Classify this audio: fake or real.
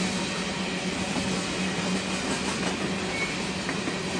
real